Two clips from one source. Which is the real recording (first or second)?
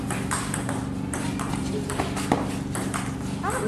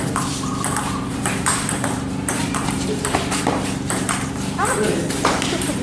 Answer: first